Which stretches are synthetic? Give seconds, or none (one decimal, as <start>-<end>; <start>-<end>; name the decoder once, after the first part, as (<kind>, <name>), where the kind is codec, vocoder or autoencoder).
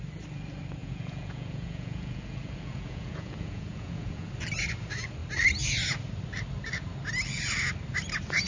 0.8-4.3 (vocoder, Vocos)